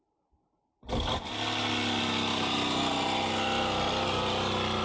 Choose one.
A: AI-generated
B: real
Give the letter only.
B